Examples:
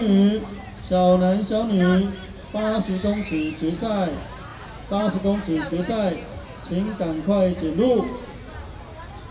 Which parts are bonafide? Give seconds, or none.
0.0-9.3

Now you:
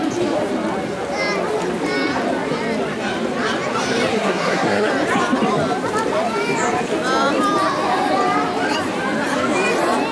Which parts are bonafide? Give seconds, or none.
0.0-4.1; 4.9-10.1

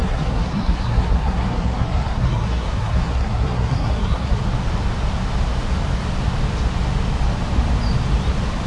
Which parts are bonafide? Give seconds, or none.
4.4-8.7

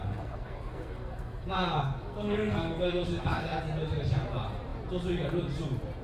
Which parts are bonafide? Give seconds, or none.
3.6-6.0

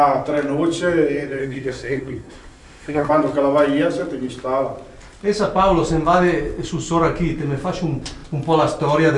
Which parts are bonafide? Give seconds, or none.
0.0-1.4; 3.1-9.2

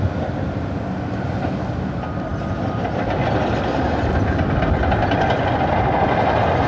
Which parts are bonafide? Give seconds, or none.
0.0-6.7

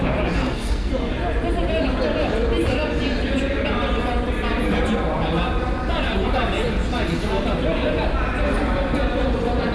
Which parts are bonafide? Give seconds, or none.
0.0-0.4; 0.9-9.7

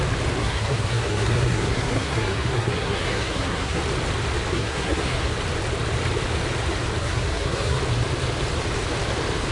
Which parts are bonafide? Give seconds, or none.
0.0-0.4; 3.8-4.5; 5.3-7.0; 7.8-9.5